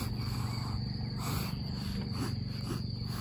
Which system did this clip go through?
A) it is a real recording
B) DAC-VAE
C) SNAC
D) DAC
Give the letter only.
A